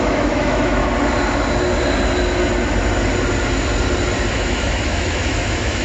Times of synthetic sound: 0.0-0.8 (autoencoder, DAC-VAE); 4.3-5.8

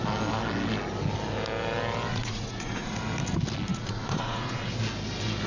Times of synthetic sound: 2.1-2.9 (vocoder, Vocos); 3.7-4.7

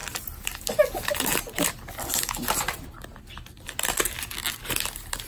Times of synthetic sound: none

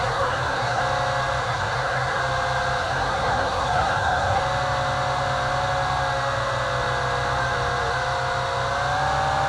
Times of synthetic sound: 0.0-0.8 (codec, SNAC); 1.4-2.2; 2.8-4.4

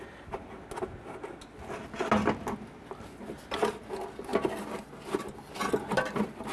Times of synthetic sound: none